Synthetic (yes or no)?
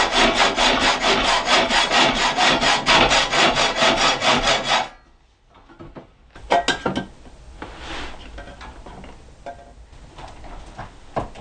no